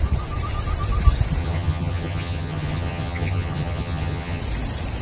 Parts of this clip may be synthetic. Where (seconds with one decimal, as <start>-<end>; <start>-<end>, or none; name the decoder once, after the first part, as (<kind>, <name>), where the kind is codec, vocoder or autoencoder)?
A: 1.4-4.4 (vocoder, HiFi-GAN)